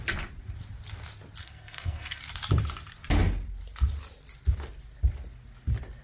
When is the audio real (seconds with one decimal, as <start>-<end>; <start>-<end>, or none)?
0.0-1.4; 2.2-6.0